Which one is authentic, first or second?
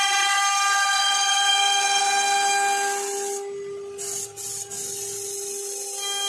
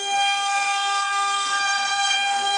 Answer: first